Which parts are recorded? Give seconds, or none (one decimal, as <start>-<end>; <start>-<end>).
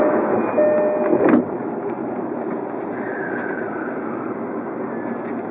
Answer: 0.0-1.1; 4.4-5.5